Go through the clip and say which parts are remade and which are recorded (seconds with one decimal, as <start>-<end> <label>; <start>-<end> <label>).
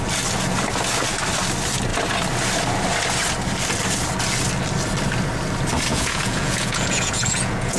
0.0-5.9 recorded; 5.9-7.8 remade